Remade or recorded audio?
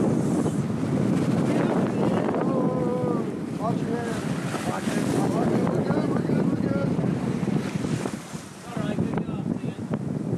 recorded